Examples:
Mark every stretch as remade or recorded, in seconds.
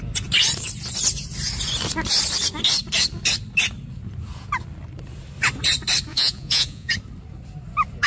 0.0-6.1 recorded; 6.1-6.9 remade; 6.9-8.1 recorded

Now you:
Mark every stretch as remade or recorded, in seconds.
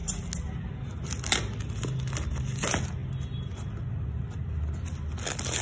0.0-5.6 recorded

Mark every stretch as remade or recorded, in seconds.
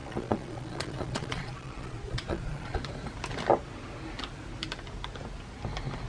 0.0-2.8 remade; 2.8-6.1 recorded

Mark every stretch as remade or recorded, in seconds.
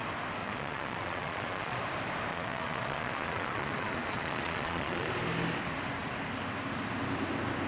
0.0-0.4 recorded; 0.4-1.8 remade; 1.8-2.3 recorded; 2.3-5.1 remade; 5.1-7.7 recorded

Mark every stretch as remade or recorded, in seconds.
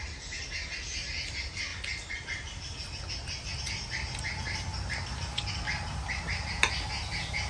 0.0-7.5 recorded